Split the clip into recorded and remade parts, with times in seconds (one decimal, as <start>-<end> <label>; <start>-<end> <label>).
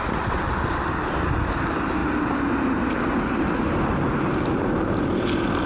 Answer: 0.0-5.7 recorded